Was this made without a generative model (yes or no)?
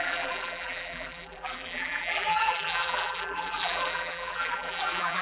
no